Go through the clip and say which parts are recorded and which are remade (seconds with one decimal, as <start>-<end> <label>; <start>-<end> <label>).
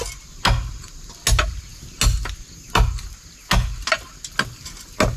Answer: 0.0-5.2 recorded